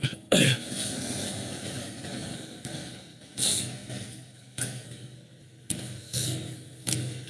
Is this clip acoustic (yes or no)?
no